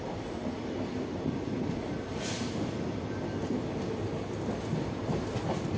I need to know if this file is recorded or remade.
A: recorded